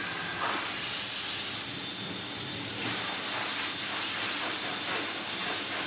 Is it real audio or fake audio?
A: real